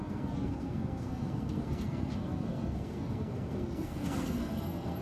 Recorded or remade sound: remade